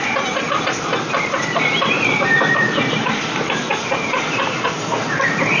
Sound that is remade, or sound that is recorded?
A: recorded